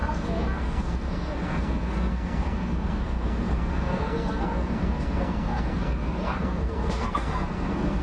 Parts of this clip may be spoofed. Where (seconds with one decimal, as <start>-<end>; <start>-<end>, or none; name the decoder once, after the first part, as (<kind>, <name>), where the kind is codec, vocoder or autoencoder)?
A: 0.0-8.0 (codec, SNAC)